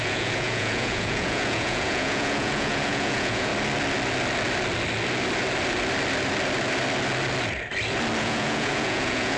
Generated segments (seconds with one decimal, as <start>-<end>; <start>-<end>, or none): 0.0-3.5; 8.2-9.4